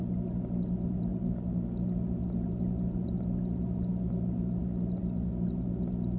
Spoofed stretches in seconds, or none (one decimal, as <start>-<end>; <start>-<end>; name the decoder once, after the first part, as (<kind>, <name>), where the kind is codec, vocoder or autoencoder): none

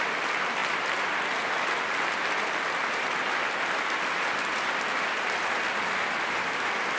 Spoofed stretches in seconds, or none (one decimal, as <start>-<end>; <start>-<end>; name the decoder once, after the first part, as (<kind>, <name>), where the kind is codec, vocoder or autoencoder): none